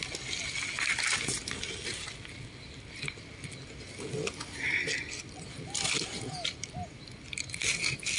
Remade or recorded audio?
recorded